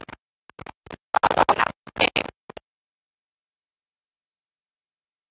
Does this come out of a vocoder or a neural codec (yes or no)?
no